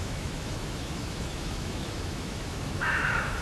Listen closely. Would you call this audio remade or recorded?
remade